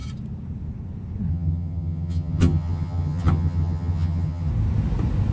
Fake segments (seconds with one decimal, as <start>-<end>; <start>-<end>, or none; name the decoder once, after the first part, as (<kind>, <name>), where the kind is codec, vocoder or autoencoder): 1.3-4.5 (vocoder, HiFi-GAN)